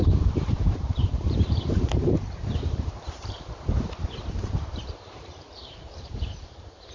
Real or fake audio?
fake